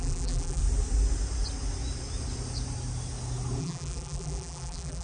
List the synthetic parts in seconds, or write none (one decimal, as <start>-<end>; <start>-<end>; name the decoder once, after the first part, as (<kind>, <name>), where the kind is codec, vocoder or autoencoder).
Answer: 0.0-0.6 (vocoder, BigVGAN v2); 3.6-5.0